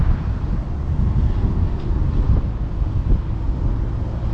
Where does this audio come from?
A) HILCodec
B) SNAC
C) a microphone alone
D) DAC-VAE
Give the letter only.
C